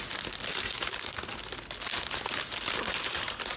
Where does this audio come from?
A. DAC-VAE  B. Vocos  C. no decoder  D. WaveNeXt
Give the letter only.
C